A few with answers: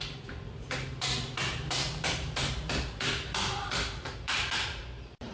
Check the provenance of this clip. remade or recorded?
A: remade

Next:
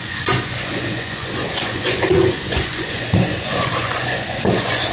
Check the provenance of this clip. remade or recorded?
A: remade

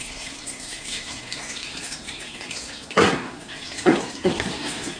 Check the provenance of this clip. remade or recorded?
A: remade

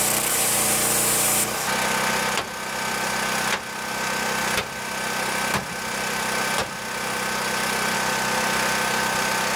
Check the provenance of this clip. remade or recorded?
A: recorded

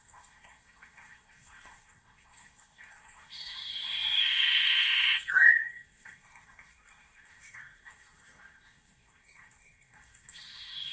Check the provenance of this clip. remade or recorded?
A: remade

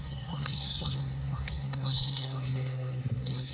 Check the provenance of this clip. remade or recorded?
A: remade